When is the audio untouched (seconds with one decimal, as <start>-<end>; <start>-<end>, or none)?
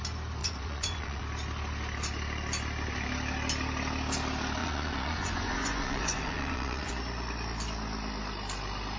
0.0-0.4; 1.2-4.6; 6.9-9.0